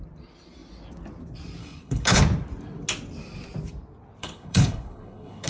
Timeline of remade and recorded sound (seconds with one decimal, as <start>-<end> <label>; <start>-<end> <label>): 0.0-1.6 recorded; 1.6-2.2 remade; 2.2-4.2 recorded; 4.2-5.5 remade